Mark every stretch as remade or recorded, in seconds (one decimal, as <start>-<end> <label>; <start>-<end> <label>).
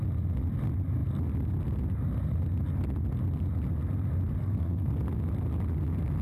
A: 0.0-4.4 recorded; 4.4-4.9 remade; 4.9-6.2 recorded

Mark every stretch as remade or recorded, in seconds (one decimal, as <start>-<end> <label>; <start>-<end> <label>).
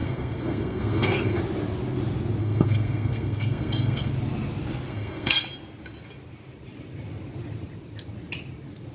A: 0.0-1.4 remade; 1.4-2.4 recorded; 2.4-4.1 remade; 4.1-4.9 recorded; 4.9-5.4 remade; 5.4-8.9 recorded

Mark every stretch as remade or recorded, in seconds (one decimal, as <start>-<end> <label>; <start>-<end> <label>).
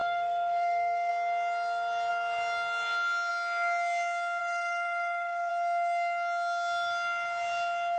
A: 0.0-1.1 remade; 1.1-4.4 recorded; 4.4-5.5 remade; 5.5-8.0 recorded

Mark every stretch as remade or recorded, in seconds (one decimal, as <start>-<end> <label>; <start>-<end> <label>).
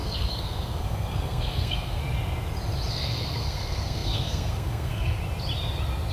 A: 0.0-2.0 remade; 2.0-2.9 recorded; 2.9-5.2 remade; 5.2-6.1 recorded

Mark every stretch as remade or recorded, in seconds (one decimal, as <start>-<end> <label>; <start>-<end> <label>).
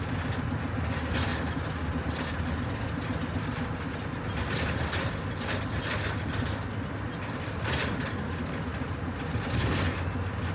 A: 0.0-10.5 recorded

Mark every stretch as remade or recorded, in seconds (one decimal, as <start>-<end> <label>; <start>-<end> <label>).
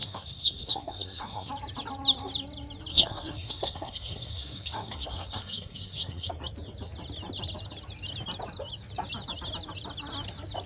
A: 0.0-1.5 remade; 1.5-2.9 recorded; 2.9-6.3 remade; 6.3-10.7 recorded